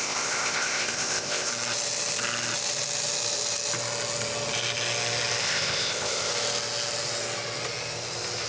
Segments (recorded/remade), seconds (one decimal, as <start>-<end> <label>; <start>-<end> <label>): 0.0-1.5 remade; 1.5-5.4 recorded; 5.4-6.3 remade; 6.3-8.5 recorded